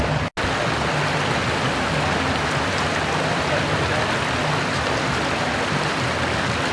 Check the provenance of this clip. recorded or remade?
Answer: recorded